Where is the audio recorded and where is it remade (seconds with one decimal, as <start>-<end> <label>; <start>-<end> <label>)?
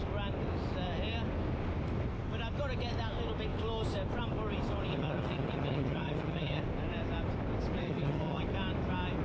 0.0-4.9 recorded; 4.9-6.6 remade; 6.6-7.8 recorded; 7.8-8.4 remade; 8.4-9.2 recorded